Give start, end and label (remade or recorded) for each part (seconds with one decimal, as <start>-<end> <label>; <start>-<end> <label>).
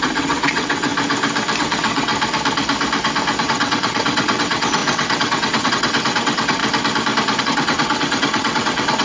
0.0-0.9 remade; 0.9-1.6 recorded; 1.6-2.1 remade; 2.1-3.4 recorded; 3.4-6.6 remade; 6.6-7.4 recorded; 7.4-9.0 remade